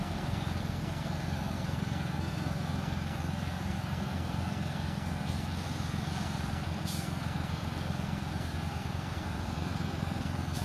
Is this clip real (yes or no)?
no